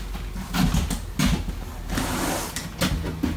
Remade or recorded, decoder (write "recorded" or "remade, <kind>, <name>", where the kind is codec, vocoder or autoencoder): recorded